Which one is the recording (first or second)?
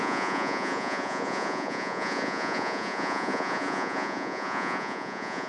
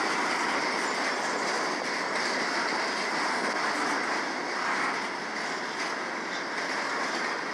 second